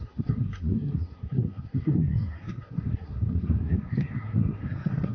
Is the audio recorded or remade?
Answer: remade